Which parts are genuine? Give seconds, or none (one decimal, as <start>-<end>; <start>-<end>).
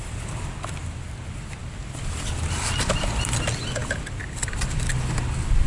0.0-5.7